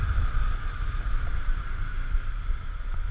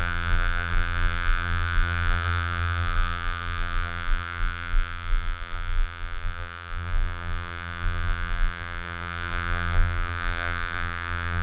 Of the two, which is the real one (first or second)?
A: first